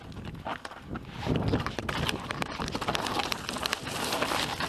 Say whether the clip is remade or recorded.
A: recorded